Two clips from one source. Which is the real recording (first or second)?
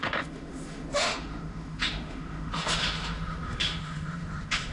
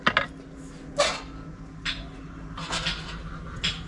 second